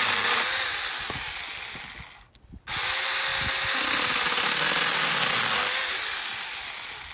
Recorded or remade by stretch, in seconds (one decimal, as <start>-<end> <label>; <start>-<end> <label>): 0.0-7.1 recorded